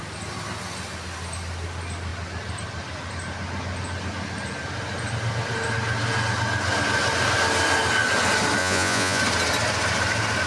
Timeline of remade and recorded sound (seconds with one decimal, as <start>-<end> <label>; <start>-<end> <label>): 0.0-8.6 recorded; 8.6-9.2 remade; 9.2-10.5 recorded

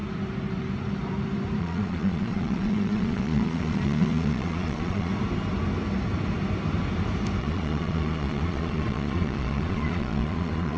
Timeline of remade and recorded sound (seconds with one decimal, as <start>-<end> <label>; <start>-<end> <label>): 0.0-1.6 recorded; 1.6-5.1 remade; 5.1-7.4 recorded; 7.4-10.8 remade